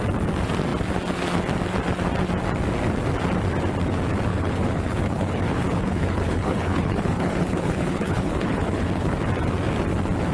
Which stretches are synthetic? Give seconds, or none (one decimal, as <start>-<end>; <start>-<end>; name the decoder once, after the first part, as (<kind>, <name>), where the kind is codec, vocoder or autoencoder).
4.3-9.1 (codec, HILCodec)